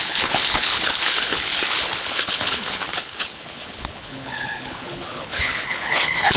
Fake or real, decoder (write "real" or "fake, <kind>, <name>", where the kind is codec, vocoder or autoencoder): fake, codec, HILCodec